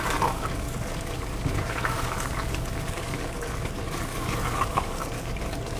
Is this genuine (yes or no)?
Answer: no